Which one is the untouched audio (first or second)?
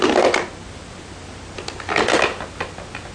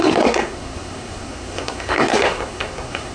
first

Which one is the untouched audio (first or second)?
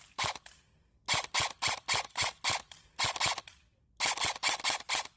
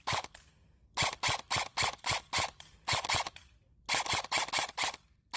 first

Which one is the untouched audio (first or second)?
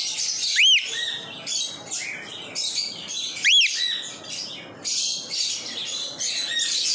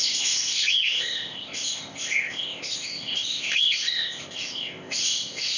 first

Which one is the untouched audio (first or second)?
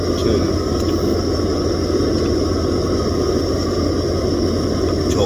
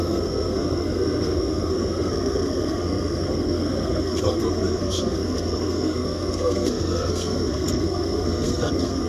first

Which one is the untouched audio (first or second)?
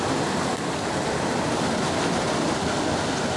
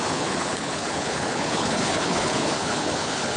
first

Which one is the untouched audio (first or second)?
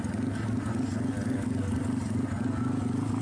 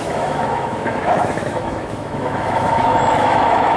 first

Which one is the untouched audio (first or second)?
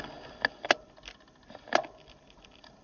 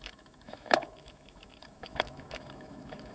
first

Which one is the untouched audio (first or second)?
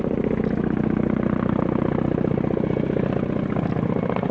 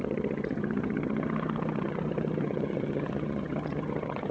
first